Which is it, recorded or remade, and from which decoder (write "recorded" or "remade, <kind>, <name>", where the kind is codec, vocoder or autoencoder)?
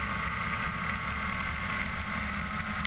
recorded